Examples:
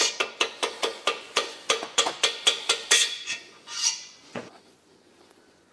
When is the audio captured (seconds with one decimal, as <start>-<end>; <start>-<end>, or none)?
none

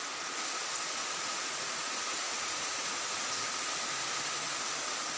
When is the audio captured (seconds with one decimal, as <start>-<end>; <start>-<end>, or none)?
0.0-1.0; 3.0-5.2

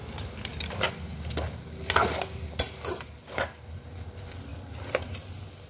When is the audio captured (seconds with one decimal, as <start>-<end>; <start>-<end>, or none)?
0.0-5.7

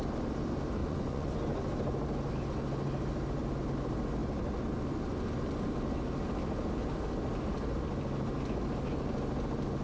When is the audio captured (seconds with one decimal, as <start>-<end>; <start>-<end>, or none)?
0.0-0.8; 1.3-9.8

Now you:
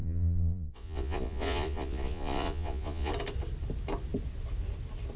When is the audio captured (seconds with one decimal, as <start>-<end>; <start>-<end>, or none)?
3.1-5.2